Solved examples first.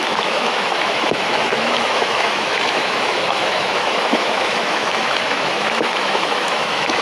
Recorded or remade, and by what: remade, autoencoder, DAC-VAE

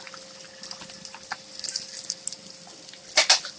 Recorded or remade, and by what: recorded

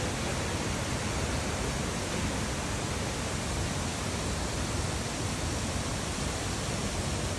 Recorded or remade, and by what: recorded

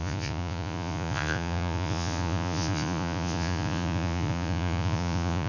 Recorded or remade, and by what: remade, vocoder, Vocos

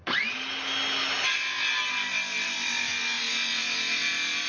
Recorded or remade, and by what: recorded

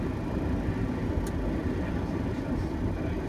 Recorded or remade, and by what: remade, vocoder, BigVGAN v2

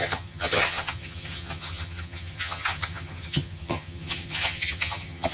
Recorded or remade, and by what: remade, vocoder, HiFi-GAN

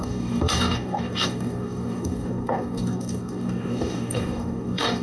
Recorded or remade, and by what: remade, codec, DAC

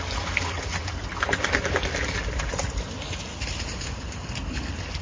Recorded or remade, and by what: recorded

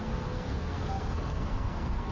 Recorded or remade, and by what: remade, codec, SNAC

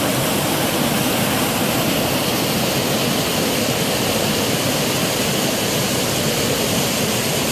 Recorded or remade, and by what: recorded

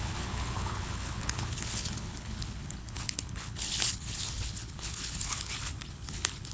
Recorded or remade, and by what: remade, codec, HILCodec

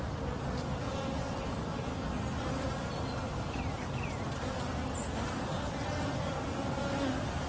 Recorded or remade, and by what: recorded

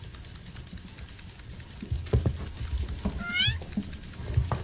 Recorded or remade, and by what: recorded